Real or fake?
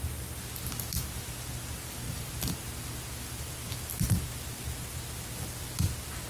real